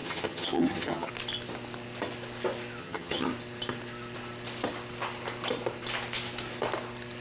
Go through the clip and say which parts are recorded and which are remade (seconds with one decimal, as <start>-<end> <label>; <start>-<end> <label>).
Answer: 0.0-1.1 remade; 1.1-2.8 recorded; 2.8-3.3 remade; 3.3-7.2 recorded

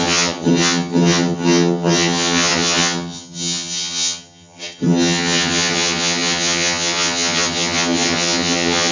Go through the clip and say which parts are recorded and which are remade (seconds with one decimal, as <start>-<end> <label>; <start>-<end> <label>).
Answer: 0.0-8.9 remade

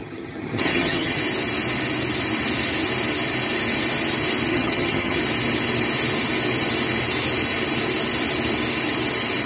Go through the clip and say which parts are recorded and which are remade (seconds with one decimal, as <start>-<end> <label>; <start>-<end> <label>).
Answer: 0.0-1.2 remade; 1.2-4.5 recorded; 4.5-5.2 remade; 5.2-9.5 recorded